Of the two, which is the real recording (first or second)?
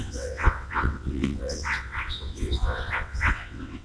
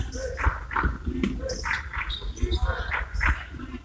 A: second